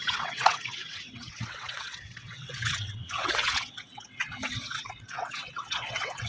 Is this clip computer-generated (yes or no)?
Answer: yes